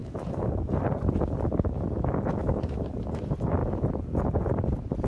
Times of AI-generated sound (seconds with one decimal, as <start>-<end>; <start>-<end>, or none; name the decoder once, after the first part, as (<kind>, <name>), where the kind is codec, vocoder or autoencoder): 0.0-0.7 (autoencoder, DAC-VAE); 2.4-3.2